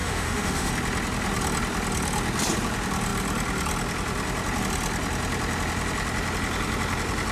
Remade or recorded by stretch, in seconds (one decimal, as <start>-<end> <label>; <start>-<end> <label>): 0.0-0.7 remade; 0.7-7.3 recorded